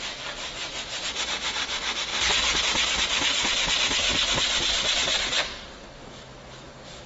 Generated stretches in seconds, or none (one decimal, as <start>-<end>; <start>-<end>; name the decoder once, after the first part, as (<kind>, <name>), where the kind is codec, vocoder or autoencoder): none